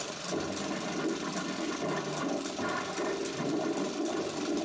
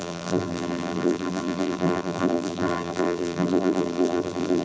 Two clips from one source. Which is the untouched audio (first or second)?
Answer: first